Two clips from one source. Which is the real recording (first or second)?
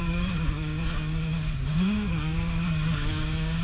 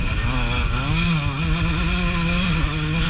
second